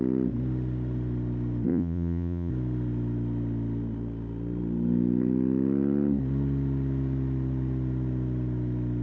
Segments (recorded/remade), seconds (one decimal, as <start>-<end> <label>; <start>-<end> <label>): 0.0-1.7 recorded; 1.7-2.5 remade; 2.5-9.0 recorded